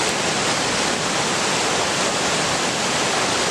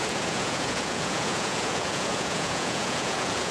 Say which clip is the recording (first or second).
first